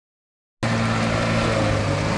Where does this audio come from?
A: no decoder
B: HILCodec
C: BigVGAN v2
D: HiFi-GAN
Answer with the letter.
A